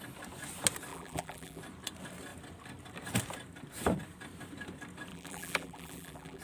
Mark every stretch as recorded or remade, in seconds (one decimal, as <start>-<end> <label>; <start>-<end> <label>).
0.0-0.9 recorded; 0.9-1.6 remade; 1.6-5.1 recorded; 5.1-6.4 remade